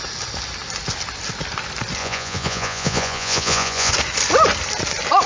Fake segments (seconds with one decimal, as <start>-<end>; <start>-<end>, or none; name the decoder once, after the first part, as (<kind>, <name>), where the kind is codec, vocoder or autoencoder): 2.0-3.9 (vocoder, Vocos)